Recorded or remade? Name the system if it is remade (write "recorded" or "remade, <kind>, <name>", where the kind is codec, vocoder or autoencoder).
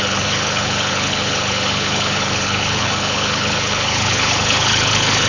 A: remade, codec, HILCodec